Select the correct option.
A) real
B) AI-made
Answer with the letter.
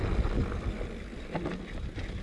A